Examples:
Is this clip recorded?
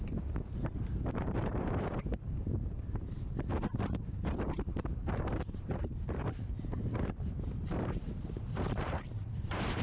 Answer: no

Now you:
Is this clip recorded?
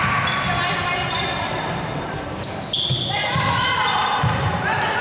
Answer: yes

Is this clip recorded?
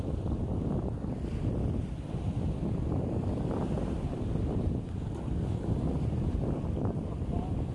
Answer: no